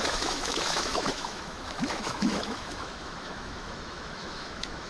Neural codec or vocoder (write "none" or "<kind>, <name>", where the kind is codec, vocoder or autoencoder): autoencoder, DAC-VAE